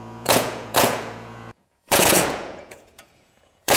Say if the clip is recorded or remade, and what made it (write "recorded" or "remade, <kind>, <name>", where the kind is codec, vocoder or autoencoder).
remade, vocoder, Vocos